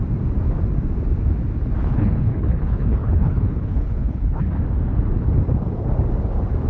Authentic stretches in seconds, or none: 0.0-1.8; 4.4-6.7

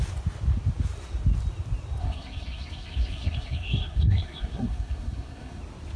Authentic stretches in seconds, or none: 0.0-2.0; 5.6-6.0

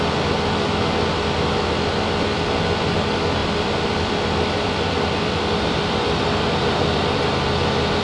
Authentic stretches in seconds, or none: 0.0-3.4

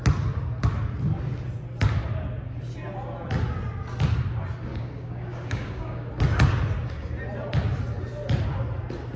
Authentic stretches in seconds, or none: 0.0-4.7; 6.1-9.2

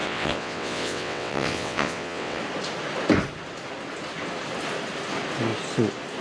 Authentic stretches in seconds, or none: 2.4-6.2

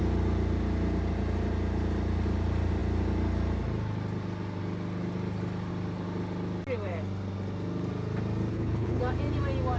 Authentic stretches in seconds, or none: 0.0-8.5; 9.0-9.8

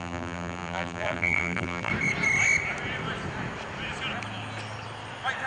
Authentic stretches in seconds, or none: 1.9-5.5